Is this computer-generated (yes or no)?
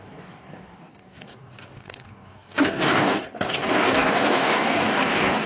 yes